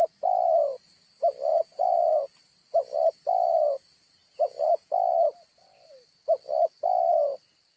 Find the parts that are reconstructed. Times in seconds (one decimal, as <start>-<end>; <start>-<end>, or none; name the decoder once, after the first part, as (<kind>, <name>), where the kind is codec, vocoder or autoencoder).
1.5-2.2 (vocoder, Vocos); 4.2-4.9